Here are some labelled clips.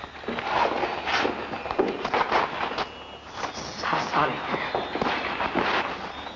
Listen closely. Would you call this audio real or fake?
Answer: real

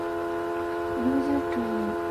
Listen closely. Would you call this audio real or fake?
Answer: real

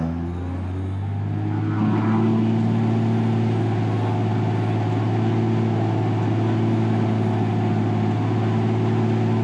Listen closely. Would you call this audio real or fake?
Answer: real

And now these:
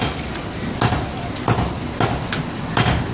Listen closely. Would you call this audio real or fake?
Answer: real